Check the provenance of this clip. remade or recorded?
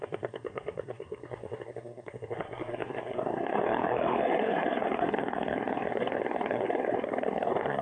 remade